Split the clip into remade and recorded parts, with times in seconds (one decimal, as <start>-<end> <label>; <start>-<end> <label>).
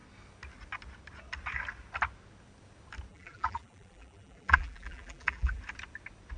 0.0-3.1 recorded; 3.1-5.6 remade; 5.6-6.4 recorded